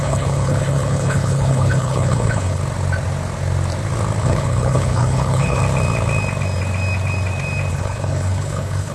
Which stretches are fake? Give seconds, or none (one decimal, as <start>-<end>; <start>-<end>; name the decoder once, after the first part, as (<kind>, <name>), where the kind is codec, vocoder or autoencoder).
0.0-2.6 (codec, HILCodec); 4.2-5.6; 7.7-8.9